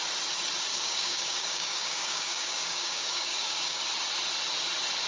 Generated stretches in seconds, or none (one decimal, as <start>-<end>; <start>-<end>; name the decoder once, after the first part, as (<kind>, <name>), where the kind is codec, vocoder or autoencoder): 0.7-3.8 (codec, DAC)